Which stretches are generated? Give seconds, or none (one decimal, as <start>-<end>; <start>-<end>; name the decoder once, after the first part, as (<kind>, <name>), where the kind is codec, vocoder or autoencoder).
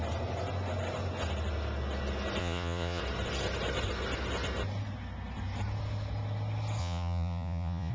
2.4-3.0 (vocoder, Vocos); 6.8-7.9